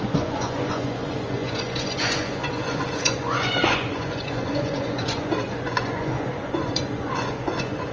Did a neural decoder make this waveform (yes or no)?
yes